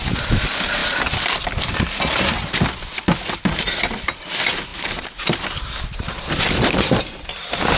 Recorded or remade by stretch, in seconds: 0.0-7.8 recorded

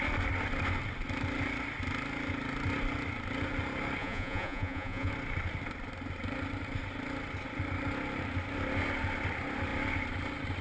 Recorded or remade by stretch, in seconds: 0.0-4.0 recorded; 4.0-5.1 remade; 5.1-10.6 recorded

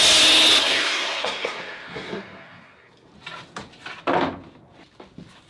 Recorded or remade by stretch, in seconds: 0.0-0.6 recorded; 0.6-3.1 remade; 3.1-5.5 recorded

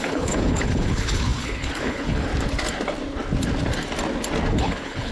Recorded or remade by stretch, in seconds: 0.0-2.3 remade; 2.3-4.5 recorded; 4.5-5.1 remade